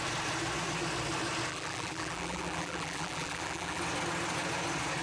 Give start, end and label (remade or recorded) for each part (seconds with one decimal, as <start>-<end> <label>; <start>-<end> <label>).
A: 0.0-1.5 recorded; 1.5-3.8 remade; 3.8-5.0 recorded

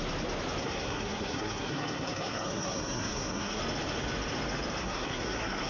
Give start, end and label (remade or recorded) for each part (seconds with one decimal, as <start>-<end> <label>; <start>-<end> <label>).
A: 0.0-0.6 recorded; 0.6-3.6 remade; 3.6-4.8 recorded; 4.8-5.7 remade

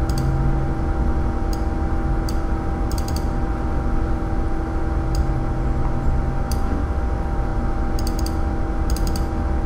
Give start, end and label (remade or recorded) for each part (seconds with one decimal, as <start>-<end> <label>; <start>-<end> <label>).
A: 0.0-9.7 recorded

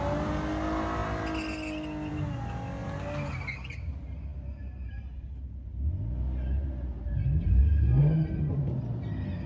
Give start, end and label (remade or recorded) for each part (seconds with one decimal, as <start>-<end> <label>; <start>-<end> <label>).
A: 0.0-9.5 recorded